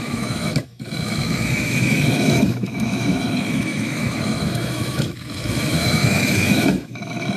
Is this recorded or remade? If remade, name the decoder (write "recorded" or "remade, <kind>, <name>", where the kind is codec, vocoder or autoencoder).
remade, autoencoder, DAC-VAE